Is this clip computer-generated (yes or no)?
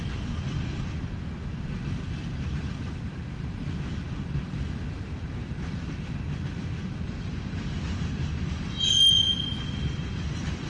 no